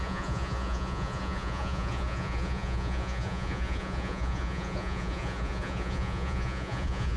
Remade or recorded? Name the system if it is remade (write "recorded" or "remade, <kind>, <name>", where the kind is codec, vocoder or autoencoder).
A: remade, vocoder, Vocos